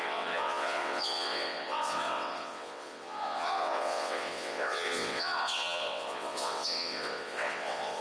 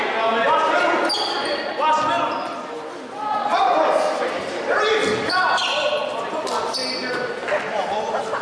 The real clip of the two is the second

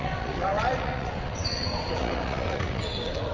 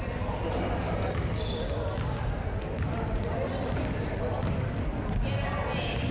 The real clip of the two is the second